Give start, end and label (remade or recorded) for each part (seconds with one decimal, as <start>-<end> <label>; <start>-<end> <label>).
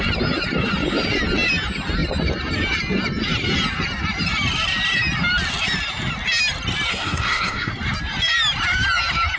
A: 0.0-6.9 recorded; 6.9-7.7 remade; 7.7-9.4 recorded